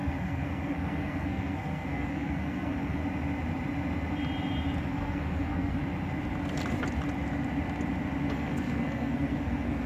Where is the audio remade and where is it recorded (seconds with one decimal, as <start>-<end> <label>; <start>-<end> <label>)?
0.0-3.0 remade; 3.0-4.9 recorded; 4.9-5.8 remade; 5.8-8.3 recorded; 8.3-9.9 remade